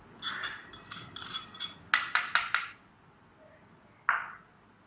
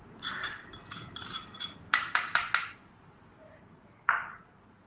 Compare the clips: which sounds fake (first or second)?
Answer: second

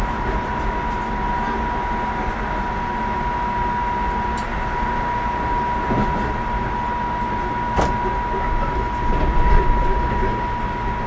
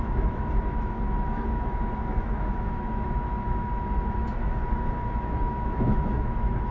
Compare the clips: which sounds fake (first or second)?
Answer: second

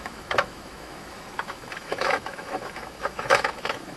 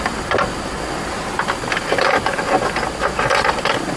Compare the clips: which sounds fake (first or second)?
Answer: first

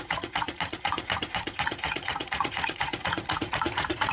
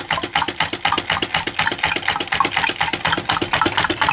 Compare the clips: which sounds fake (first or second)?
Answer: first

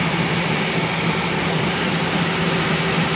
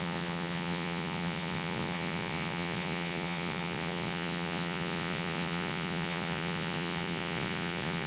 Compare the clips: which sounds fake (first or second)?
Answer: second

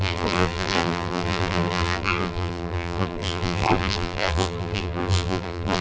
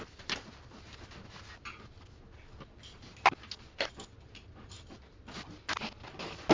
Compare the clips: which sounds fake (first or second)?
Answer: first